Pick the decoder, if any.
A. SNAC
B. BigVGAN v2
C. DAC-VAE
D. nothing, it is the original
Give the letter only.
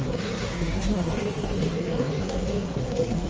A